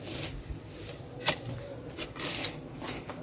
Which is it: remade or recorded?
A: recorded